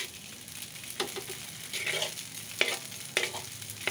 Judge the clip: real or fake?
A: real